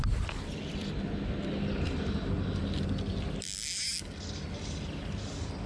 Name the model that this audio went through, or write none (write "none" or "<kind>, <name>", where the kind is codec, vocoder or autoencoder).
none